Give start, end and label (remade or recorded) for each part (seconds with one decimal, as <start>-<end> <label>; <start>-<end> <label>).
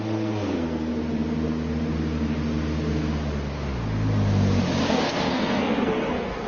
0.0-0.9 remade; 0.9-4.8 recorded; 4.8-6.5 remade